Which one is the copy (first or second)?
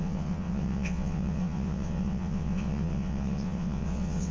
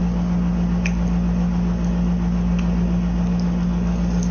first